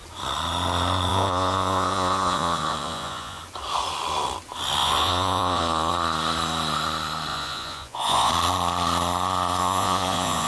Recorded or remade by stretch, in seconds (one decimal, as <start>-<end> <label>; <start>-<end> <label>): 0.0-1.1 recorded; 1.1-3.4 remade; 3.4-4.8 recorded; 4.8-5.9 remade; 5.9-7.3 recorded; 7.3-8.3 remade; 8.3-9.6 recorded; 9.6-10.5 remade